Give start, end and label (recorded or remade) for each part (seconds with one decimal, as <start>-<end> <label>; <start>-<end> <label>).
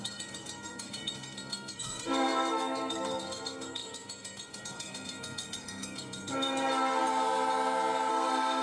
0.0-7.0 remade; 7.0-8.1 recorded; 8.1-8.6 remade